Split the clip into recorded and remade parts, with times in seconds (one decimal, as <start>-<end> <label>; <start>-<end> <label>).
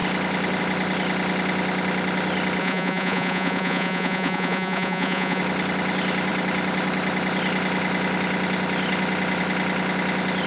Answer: 0.0-2.6 recorded; 2.6-5.4 remade; 5.4-10.5 recorded